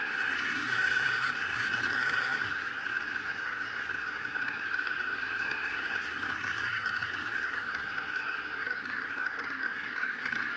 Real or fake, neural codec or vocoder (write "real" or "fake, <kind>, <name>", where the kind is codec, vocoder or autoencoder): fake, codec, SNAC